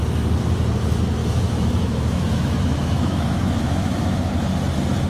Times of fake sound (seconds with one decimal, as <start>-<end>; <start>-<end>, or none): 1.2-4.3